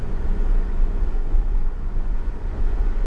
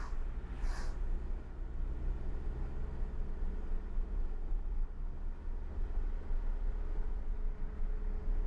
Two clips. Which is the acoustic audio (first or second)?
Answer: second